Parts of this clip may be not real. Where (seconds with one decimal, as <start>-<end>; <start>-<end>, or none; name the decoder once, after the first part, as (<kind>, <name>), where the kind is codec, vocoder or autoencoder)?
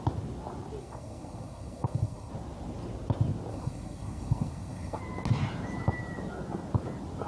0.8-2.3 (codec, SNAC); 3.5-5.0